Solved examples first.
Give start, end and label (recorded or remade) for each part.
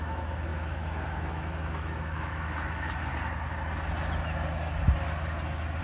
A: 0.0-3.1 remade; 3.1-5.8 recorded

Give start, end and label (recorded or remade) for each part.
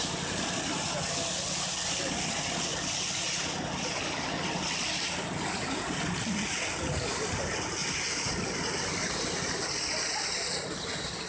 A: 0.0-11.3 recorded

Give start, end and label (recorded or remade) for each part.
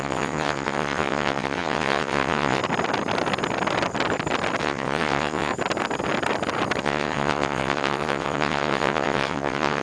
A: 0.0-2.6 remade; 2.6-4.6 recorded; 4.6-5.5 remade; 5.5-6.8 recorded; 6.8-9.8 remade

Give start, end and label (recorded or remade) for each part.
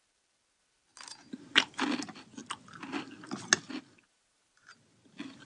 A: 0.0-5.4 recorded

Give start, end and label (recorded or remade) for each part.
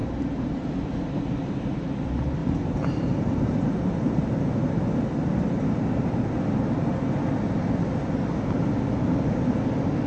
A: 0.0-0.7 remade; 0.7-2.4 recorded; 2.4-4.8 remade; 4.8-10.1 recorded